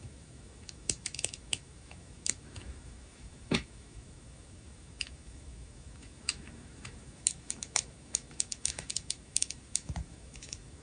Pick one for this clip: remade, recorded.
remade